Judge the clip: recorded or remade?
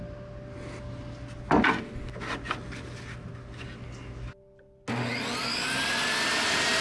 recorded